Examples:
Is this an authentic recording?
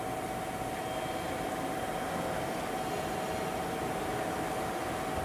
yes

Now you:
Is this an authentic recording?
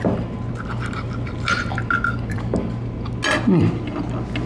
yes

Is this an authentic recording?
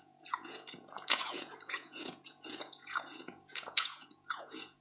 no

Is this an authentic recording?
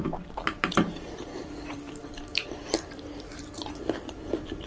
no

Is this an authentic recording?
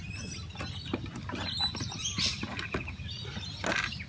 yes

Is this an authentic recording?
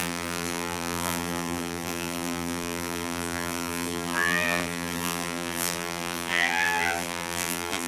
no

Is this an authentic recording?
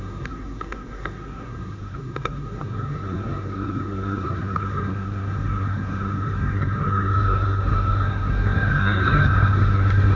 no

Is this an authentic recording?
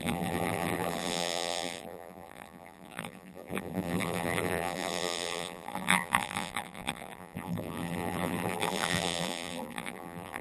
no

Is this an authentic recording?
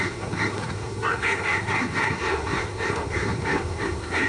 no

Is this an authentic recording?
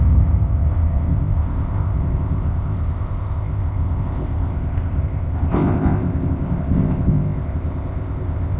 no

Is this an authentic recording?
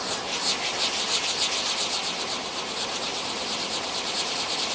yes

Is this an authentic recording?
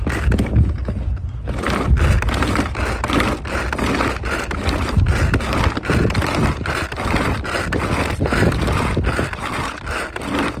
yes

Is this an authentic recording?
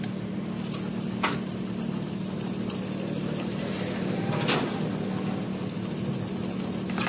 yes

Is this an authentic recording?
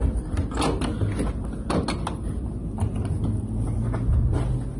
yes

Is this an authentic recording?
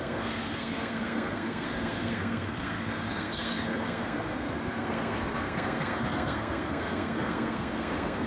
no